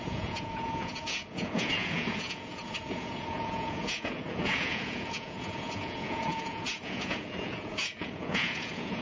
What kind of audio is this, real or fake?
fake